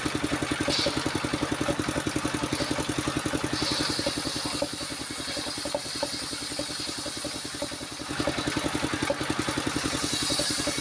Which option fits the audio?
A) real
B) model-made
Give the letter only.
A